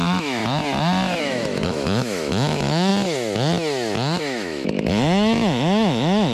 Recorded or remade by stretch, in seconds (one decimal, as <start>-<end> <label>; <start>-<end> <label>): 0.0-0.4 remade; 0.4-1.2 recorded; 1.2-2.9 remade; 2.9-4.2 recorded; 4.2-6.3 remade